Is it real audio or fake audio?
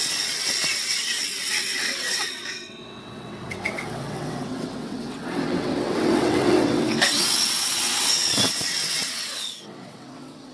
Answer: fake